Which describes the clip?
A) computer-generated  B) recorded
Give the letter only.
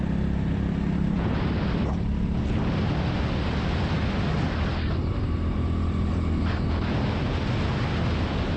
B